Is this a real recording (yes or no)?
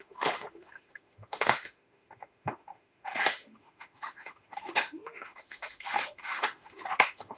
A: no